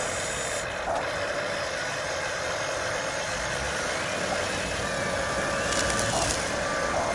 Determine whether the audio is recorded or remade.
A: recorded